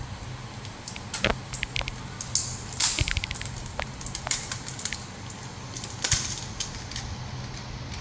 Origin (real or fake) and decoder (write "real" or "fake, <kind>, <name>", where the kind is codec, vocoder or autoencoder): real